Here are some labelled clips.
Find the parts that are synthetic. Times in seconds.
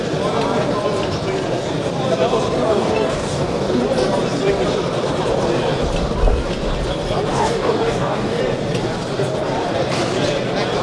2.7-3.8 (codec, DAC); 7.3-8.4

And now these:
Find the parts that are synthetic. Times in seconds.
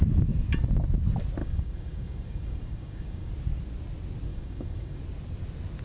1.4-3.3 (codec, DAC); 4.3-5.0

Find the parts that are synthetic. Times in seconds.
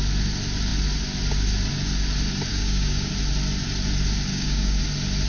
2.5-3.1 (codec, DAC); 4.3-4.8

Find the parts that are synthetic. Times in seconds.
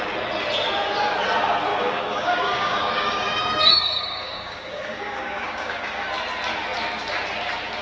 1.7-6.1 (codec, DAC)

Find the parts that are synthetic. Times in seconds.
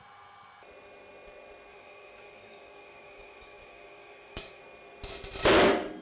1.7-4.6 (codec, DAC)